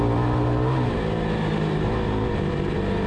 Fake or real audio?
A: real